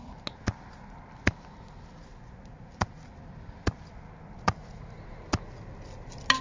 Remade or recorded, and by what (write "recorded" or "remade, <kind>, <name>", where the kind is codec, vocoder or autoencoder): recorded